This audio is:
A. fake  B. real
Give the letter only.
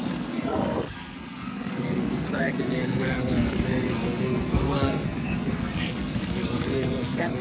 A